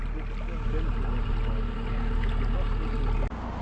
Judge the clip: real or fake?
real